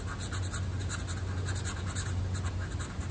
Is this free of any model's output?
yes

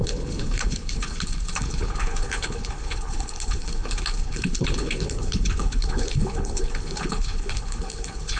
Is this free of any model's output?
no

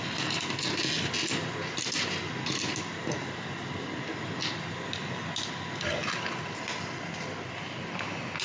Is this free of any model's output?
yes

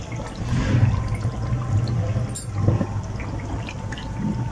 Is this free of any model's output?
yes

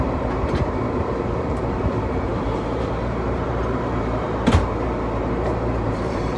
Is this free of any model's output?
no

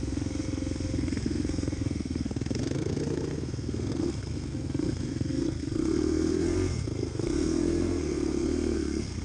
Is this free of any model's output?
no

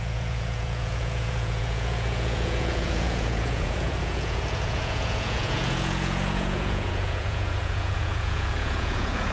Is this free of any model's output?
no